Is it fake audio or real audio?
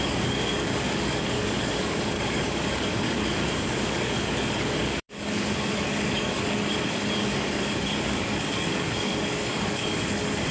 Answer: fake